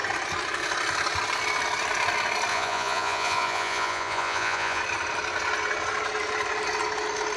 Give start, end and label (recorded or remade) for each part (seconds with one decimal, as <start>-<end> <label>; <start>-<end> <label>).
0.0-2.5 recorded; 2.5-4.8 remade; 4.8-7.4 recorded